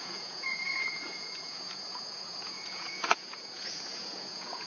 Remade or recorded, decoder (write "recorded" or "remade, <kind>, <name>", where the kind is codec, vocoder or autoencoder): remade, vocoder, Vocos